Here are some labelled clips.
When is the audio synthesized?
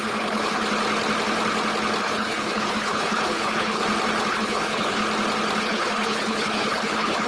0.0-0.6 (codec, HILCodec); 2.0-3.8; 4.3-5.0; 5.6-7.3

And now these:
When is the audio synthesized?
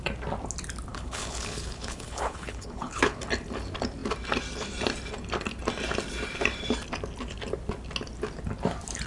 0.9-3.2 (codec, HILCodec)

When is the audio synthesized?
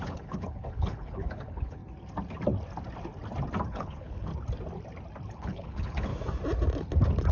0.0-1.8 (codec, HILCodec); 3.7-4.3; 5.3-6.1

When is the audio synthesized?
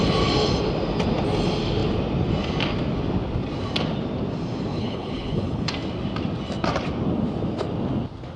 4.7-5.7 (codec, HILCodec)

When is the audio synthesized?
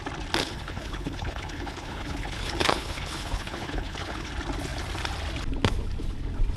0.4-4.3 (codec, HILCodec)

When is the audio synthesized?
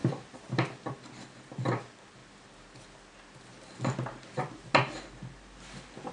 none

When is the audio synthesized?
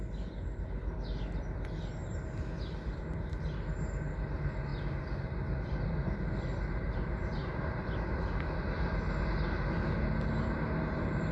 none